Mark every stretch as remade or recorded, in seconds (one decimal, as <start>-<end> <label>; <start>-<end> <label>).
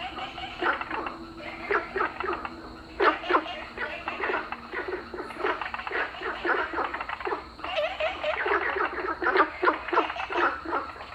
0.0-11.1 recorded